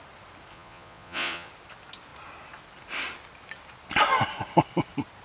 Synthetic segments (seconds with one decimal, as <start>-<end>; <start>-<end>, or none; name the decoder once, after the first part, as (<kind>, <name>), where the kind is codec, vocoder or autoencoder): 0.5-1.5 (vocoder, Vocos)